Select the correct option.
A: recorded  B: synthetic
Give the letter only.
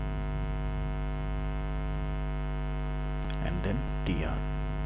A